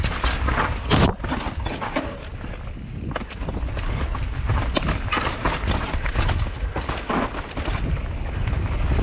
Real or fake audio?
real